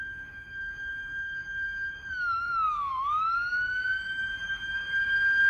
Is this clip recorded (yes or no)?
no